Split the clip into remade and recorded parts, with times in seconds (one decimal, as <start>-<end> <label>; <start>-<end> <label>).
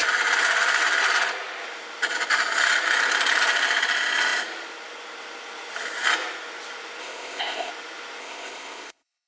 0.0-7.0 recorded; 7.0-7.7 remade; 7.7-8.2 recorded; 8.2-9.3 remade